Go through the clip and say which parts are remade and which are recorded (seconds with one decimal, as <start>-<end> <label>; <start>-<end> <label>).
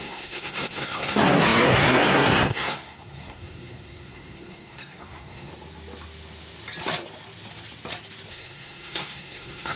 0.0-5.5 remade; 5.5-8.3 recorded; 8.3-9.8 remade